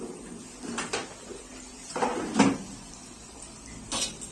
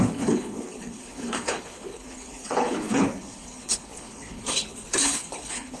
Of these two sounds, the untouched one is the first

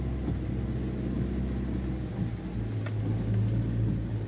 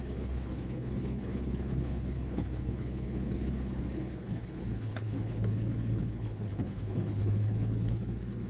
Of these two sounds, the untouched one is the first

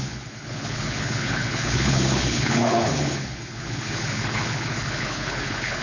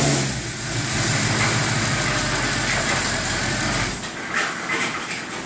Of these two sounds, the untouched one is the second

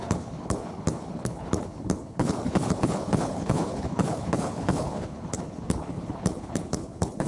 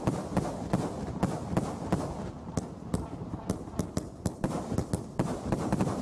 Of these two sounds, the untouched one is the second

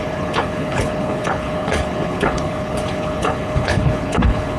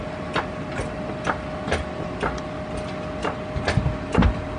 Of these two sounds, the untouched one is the second